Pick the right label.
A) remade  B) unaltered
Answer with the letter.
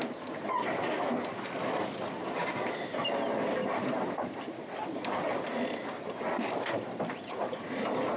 B